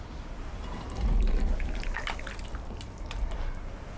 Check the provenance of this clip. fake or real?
real